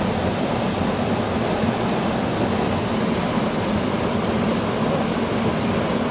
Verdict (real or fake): real